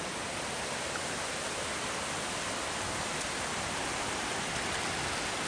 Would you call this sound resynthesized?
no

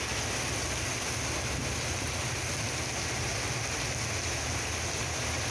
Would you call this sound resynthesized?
no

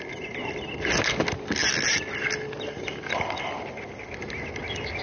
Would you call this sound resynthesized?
no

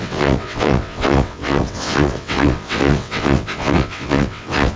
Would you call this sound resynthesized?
yes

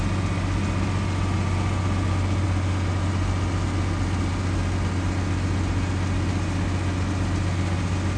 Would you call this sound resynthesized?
no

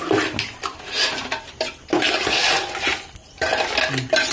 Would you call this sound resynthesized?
no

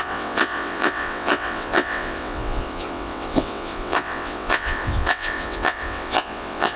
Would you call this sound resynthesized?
yes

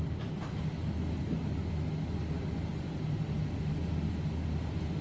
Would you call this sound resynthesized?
no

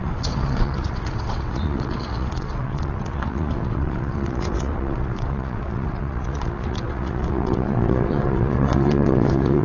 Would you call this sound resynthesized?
yes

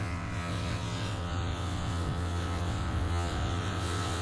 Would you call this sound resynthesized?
yes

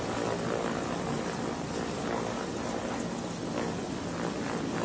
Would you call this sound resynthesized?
no